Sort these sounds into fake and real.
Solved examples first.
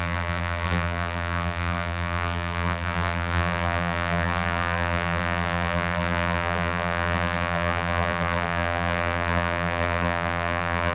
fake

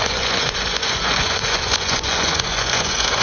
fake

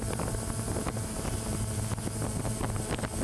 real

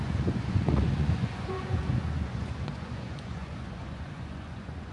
fake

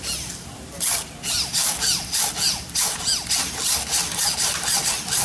real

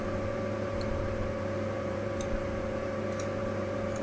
fake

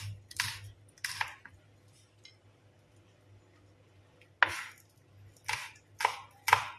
real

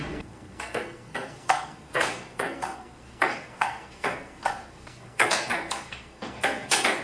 fake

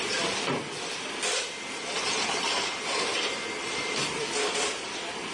real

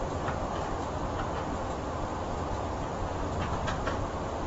real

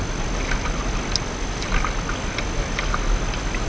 real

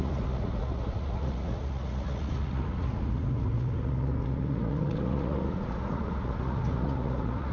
fake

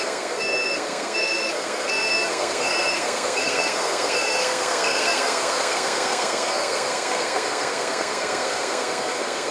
fake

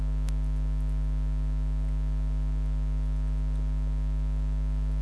real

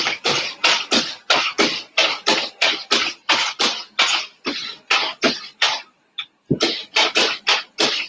real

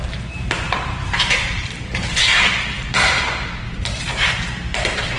fake